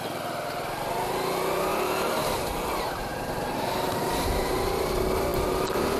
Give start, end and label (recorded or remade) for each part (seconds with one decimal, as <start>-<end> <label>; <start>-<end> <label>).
0.0-1.7 recorded; 1.7-2.4 remade; 2.4-3.1 recorded; 3.1-4.2 remade; 4.2-6.0 recorded